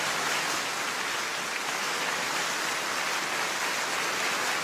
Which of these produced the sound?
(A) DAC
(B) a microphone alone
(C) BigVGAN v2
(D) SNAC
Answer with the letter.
B